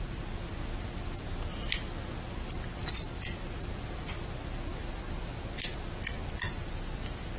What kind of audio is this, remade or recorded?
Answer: recorded